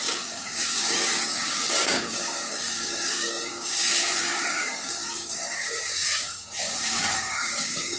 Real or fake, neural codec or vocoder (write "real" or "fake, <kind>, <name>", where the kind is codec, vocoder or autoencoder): fake, codec, DAC